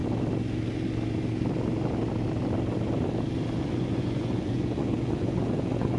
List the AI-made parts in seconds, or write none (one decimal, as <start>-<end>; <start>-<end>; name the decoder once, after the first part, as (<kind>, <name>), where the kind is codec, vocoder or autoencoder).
3.6-6.0 (vocoder, Vocos)